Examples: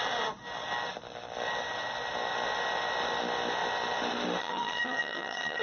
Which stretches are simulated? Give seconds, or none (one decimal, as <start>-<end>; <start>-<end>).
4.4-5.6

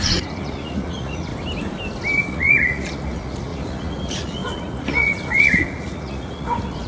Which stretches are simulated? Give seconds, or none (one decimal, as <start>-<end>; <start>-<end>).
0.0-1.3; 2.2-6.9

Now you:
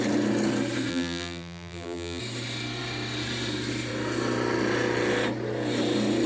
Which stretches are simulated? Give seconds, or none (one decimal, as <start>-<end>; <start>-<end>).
0.9-2.2